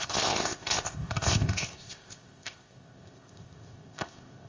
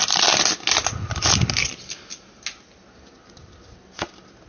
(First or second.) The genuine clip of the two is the second